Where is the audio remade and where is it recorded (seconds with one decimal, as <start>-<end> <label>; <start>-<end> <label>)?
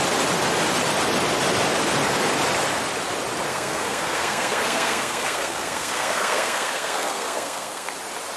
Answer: 0.0-3.5 recorded; 3.5-7.9 remade; 7.9-8.4 recorded